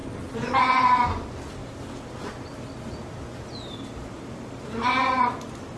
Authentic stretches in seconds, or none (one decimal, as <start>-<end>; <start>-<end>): 0.0-5.8